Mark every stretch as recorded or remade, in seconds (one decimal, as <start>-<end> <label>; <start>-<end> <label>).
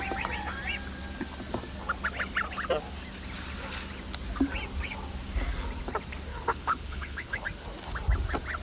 0.0-6.3 recorded; 6.3-7.4 remade; 7.4-8.6 recorded